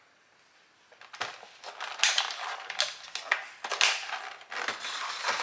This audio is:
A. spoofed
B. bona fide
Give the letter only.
B